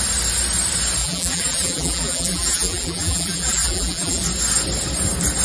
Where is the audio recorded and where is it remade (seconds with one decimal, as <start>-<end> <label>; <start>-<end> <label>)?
0.0-1.0 recorded; 1.0-4.2 remade; 4.2-5.4 recorded